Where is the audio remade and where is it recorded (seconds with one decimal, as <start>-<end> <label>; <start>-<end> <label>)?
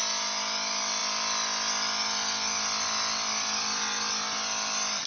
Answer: 0.0-5.1 recorded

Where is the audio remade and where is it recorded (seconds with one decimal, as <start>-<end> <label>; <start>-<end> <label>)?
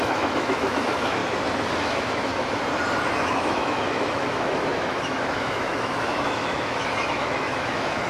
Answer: 0.0-1.2 remade; 1.2-1.8 recorded; 1.8-2.3 remade; 2.3-3.2 recorded; 3.2-8.1 remade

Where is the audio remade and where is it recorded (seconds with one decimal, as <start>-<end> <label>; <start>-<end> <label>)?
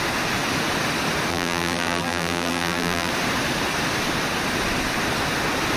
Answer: 0.0-1.3 recorded; 1.3-3.1 remade; 3.1-5.8 recorded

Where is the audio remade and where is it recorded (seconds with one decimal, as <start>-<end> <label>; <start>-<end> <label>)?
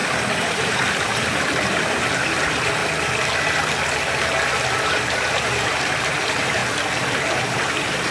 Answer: 0.0-2.8 remade; 2.8-4.8 recorded; 4.8-6.6 remade; 6.6-7.3 recorded; 7.3-8.1 remade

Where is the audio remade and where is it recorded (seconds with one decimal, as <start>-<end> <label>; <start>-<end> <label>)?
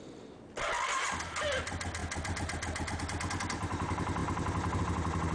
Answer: 0.0-5.3 recorded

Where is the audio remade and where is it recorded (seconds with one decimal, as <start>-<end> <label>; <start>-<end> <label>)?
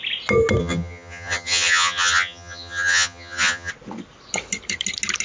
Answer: 0.0-0.6 recorded; 0.6-3.7 remade; 3.7-5.2 recorded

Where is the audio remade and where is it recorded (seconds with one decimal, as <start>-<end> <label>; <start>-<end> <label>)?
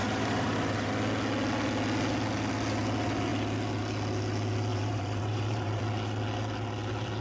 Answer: 0.0-0.9 remade; 0.9-4.7 recorded; 4.7-5.8 remade; 5.8-7.2 recorded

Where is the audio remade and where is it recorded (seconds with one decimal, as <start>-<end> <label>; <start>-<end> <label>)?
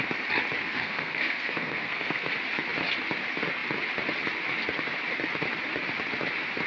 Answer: 0.0-0.6 recorded; 0.6-2.3 remade; 2.3-6.7 recorded